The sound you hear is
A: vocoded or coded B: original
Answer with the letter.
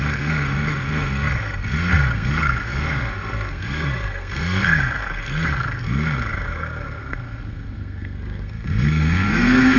A